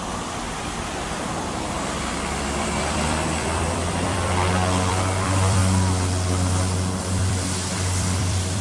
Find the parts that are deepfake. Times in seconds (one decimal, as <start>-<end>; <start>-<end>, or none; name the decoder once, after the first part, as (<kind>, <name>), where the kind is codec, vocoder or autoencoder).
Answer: 0.0-5.6 (vocoder, BigVGAN v2); 7.0-8.6